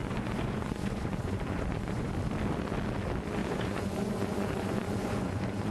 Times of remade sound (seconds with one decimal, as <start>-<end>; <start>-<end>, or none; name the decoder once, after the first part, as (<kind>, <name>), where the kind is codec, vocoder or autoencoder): 0.0-2.1 (vocoder, Vocos); 3.4-5.7